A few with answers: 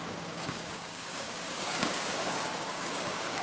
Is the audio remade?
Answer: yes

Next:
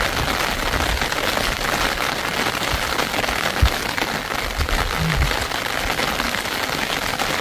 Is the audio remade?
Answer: no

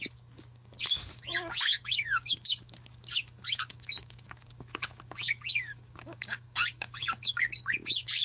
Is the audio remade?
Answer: yes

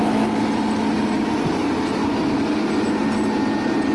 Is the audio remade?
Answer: no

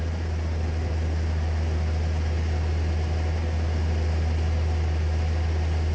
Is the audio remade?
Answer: no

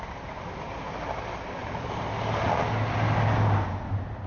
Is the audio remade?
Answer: no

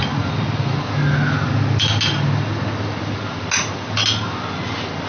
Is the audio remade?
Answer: no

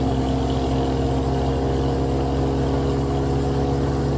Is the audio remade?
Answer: no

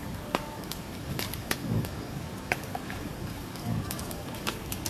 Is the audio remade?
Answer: yes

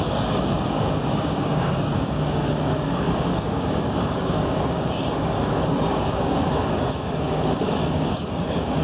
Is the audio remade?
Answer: yes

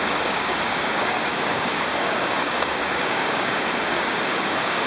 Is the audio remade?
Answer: yes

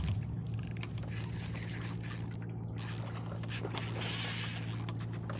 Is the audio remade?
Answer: no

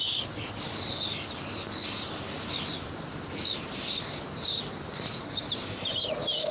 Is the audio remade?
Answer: no